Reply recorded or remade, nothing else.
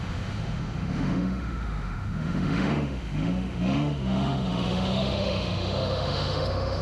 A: remade